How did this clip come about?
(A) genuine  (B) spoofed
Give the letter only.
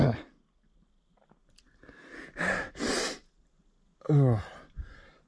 A